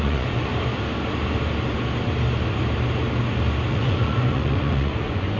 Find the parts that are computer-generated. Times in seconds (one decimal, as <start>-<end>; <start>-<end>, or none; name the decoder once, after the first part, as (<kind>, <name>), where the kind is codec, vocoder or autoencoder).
0.0-0.5 (vocoder, Vocos); 3.7-5.4